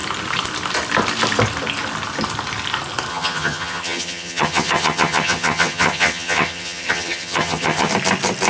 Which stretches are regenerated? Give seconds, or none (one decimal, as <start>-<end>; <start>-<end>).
3.1-7.9